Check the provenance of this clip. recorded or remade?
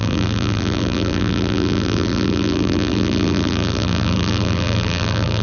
remade